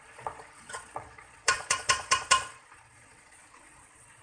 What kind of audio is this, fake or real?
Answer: fake